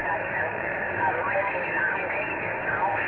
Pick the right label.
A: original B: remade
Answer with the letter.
B